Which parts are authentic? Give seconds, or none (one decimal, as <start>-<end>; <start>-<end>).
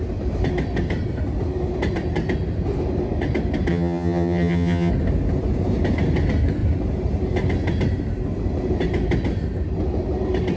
0.0-3.7; 4.9-10.6